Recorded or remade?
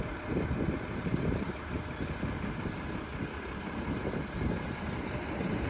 remade